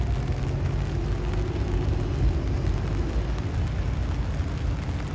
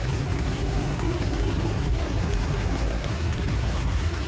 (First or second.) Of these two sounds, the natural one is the first